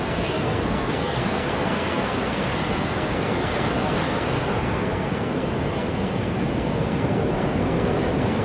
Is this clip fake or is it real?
fake